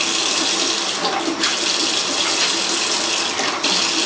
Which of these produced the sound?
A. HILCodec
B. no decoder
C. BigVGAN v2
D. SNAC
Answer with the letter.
B